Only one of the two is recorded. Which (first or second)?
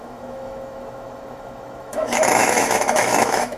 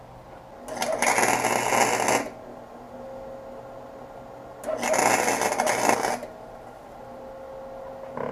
second